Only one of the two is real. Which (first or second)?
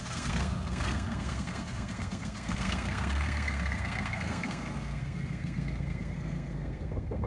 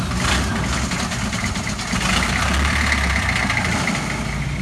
second